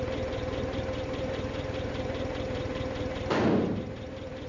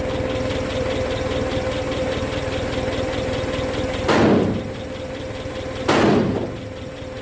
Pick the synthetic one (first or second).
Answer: first